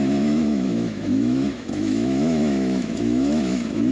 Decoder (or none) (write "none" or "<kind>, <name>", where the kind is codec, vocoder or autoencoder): autoencoder, DAC-VAE